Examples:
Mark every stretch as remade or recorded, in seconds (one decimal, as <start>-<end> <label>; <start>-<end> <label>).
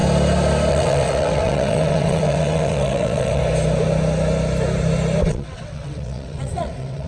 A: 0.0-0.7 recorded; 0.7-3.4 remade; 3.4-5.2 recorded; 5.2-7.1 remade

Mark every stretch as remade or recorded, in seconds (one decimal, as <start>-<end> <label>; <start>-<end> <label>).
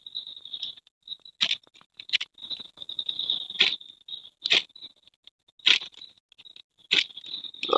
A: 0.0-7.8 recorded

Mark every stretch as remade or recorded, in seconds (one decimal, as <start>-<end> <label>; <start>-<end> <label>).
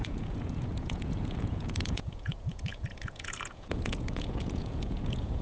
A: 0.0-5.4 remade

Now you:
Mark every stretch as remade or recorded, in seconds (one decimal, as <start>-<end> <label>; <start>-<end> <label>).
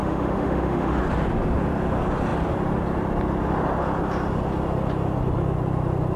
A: 0.0-1.0 remade; 1.0-6.2 recorded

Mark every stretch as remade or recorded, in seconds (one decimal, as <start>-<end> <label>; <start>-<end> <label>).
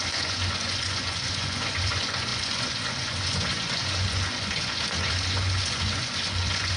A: 0.0-6.8 remade